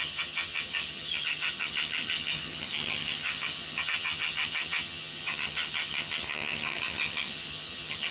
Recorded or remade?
remade